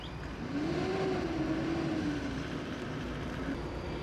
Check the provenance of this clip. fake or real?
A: fake